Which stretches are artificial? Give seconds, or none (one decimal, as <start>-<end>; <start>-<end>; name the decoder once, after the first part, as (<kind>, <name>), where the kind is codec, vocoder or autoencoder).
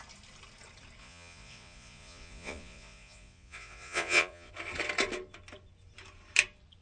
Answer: 1.0-4.5 (vocoder, Vocos)